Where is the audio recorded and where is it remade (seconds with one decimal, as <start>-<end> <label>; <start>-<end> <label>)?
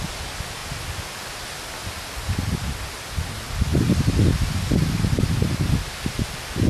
0.0-6.7 recorded